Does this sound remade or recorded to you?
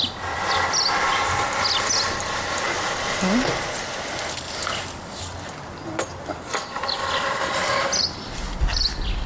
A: recorded